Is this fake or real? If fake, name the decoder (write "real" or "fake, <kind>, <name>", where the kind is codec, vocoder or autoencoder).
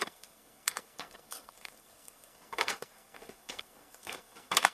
fake, codec, SNAC